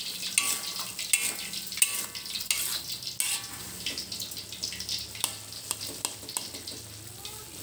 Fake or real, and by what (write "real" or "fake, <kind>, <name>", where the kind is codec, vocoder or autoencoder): real